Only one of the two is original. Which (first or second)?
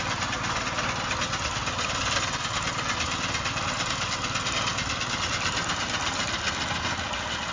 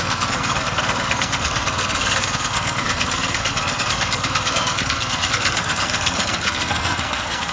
first